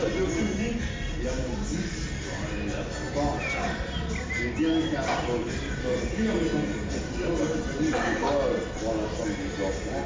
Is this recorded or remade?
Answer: recorded